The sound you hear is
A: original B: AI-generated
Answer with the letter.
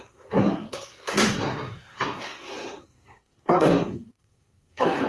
B